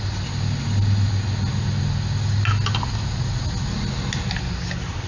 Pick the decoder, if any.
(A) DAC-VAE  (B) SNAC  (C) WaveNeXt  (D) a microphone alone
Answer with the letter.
D